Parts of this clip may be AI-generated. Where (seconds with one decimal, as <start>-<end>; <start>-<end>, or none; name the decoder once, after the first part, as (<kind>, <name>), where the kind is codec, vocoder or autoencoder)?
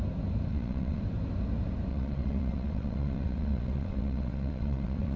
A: 0.5-1.0 (vocoder, WaveNeXt); 1.9-5.2